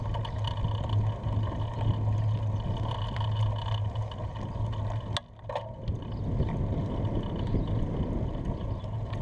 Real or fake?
real